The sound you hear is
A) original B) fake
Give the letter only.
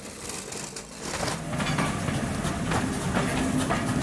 A